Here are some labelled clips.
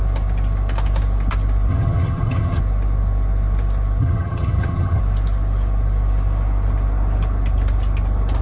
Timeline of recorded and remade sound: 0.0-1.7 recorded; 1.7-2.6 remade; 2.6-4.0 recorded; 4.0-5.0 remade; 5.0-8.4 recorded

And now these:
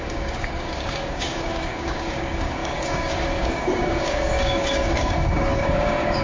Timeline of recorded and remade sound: 0.0-6.2 remade

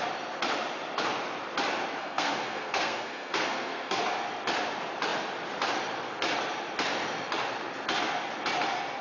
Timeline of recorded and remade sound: 0.0-2.0 recorded; 2.0-4.0 remade; 4.0-9.0 recorded

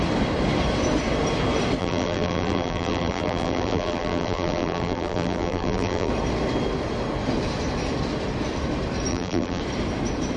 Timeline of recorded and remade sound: 0.0-1.8 recorded; 1.8-6.1 remade; 6.1-9.1 recorded; 9.1-9.6 remade; 9.6-10.4 recorded

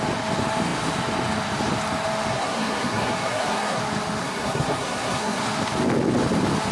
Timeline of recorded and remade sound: 0.0-2.3 recorded; 2.3-3.8 remade; 3.8-4.2 recorded; 4.2-5.4 remade; 5.4-6.7 recorded

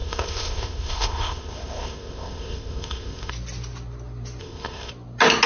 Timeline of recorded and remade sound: 0.0-3.3 remade; 3.3-4.4 recorded; 4.4-4.9 remade; 4.9-5.5 recorded

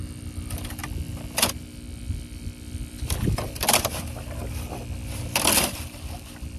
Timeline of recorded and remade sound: 0.0-0.8 recorded; 0.8-1.5 remade; 1.5-2.0 recorded; 2.0-4.8 remade; 4.8-6.6 recorded